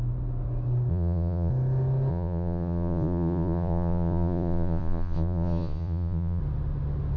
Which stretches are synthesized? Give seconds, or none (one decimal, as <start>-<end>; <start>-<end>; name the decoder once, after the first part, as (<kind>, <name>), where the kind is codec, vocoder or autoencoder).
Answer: 0.9-1.5 (vocoder, Vocos); 2.1-6.4